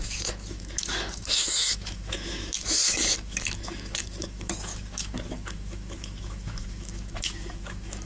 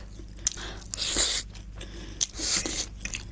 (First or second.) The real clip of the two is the second